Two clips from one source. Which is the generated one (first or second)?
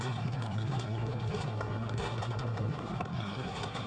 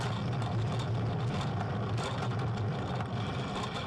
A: first